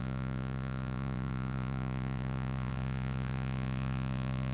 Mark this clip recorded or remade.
remade